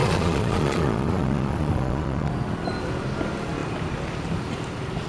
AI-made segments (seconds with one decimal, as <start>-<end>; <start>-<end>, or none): 0.0-2.3